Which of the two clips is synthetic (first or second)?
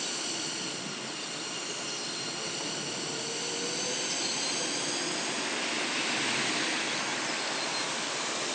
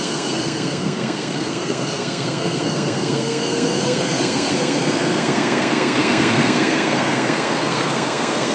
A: second